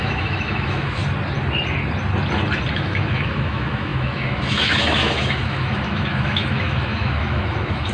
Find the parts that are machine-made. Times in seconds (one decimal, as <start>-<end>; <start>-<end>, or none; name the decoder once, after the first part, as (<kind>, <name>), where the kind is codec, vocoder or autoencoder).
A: 0.0-1.0 (autoencoder, DAC-VAE); 2.7-7.9

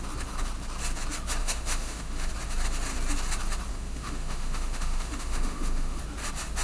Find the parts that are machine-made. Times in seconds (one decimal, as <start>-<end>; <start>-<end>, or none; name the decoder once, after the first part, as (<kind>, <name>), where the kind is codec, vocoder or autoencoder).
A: 1.4-2.3 (autoencoder, DAC-VAE); 3.7-6.0

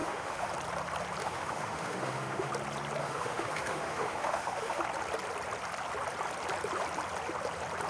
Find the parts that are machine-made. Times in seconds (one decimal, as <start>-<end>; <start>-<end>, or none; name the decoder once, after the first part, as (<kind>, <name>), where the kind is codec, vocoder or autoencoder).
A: 0.0-0.5 (autoencoder, DAC-VAE); 1.2-2.5; 3.0-4.8

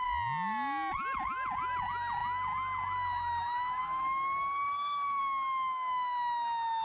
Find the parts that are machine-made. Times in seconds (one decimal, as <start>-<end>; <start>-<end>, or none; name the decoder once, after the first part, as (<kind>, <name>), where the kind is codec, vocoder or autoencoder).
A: 3.8-5.2 (autoencoder, DAC-VAE)

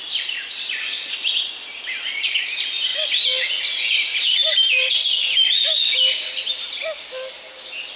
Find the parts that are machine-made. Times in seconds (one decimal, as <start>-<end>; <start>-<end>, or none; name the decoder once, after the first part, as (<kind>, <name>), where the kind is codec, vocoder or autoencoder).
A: none

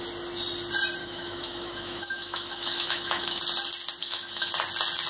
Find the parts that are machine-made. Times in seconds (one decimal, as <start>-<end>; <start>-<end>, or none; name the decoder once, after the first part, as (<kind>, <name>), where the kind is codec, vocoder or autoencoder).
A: 1.0-3.4 (autoencoder, DAC-VAE); 4.0-4.5

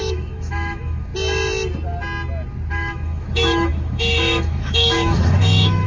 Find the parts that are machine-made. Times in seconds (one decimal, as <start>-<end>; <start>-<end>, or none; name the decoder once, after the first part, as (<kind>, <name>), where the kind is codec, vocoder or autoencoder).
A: 0.0-1.1 (autoencoder, DAC-VAE); 2.7-5.9